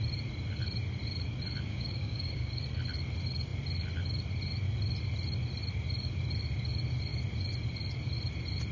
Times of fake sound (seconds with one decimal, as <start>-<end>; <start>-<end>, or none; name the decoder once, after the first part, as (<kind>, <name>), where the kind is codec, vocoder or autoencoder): 1.7-2.6 (codec, DAC)